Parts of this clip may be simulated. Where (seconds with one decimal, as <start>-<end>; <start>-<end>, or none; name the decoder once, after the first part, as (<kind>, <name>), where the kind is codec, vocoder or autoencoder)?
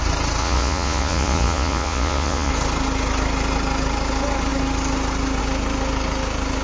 0.4-2.5 (vocoder, Vocos)